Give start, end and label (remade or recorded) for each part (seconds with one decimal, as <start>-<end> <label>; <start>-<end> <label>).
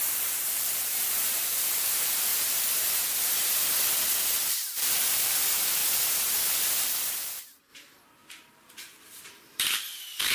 0.0-5.8 remade; 5.8-6.5 recorded; 6.5-10.3 remade